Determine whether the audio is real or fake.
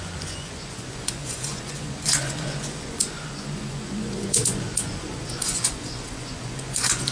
fake